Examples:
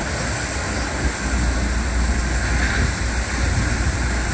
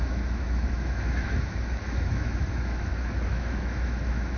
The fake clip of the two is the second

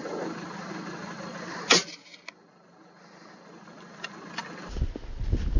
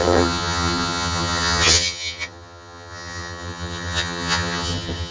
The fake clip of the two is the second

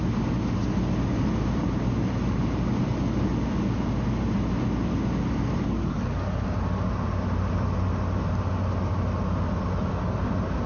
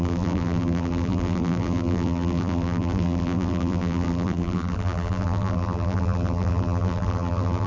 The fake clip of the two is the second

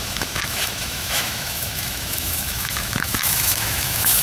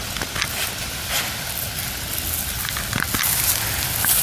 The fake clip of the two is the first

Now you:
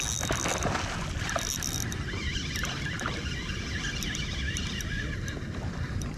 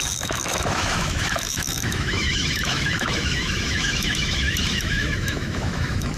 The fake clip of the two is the second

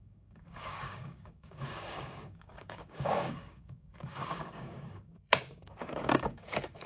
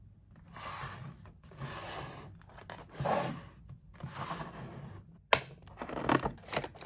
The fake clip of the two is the first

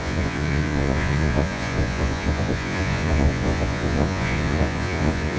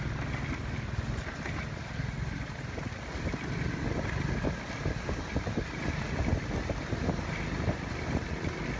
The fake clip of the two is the first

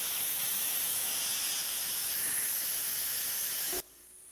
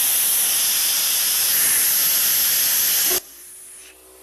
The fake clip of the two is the first